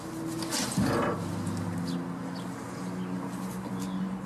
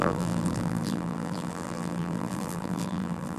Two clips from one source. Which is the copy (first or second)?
second